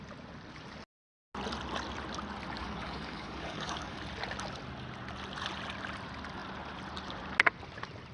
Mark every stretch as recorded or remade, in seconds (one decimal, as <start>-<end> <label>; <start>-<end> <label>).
0.0-2.6 recorded; 2.6-4.0 remade; 4.0-8.1 recorded